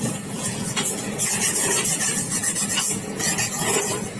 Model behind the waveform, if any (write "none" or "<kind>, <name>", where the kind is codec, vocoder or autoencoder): vocoder, Vocos